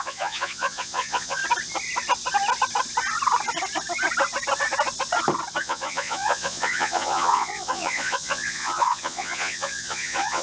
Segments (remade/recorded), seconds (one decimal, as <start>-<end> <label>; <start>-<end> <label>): 0.0-1.4 remade; 1.4-5.6 recorded; 5.6-10.4 remade